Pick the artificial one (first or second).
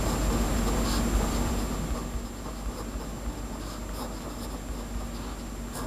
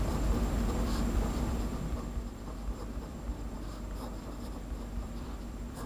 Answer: second